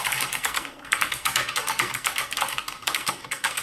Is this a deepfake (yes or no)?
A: yes